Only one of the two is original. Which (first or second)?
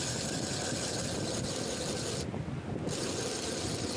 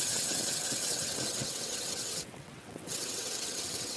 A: first